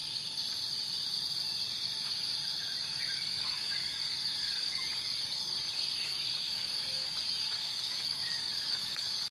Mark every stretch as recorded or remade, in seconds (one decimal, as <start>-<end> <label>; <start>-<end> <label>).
0.0-3.2 recorded; 3.2-9.3 remade